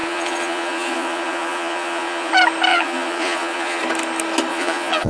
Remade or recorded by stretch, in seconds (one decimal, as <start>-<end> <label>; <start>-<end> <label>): 0.0-2.3 remade; 2.3-2.7 recorded; 2.7-3.8 remade; 3.8-4.5 recorded; 4.5-5.1 remade